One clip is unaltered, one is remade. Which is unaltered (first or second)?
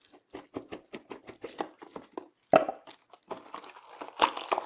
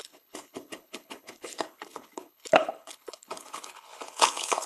first